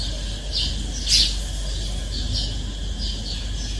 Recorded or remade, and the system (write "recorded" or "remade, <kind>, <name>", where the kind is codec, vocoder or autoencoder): recorded